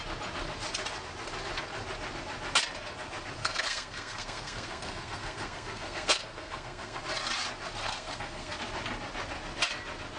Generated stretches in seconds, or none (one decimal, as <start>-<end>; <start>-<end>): 3.4-7.0; 7.8-8.6